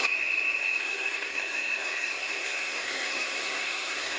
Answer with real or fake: fake